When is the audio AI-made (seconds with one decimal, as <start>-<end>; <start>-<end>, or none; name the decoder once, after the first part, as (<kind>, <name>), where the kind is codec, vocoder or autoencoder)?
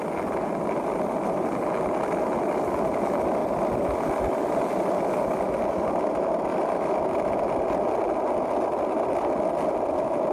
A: none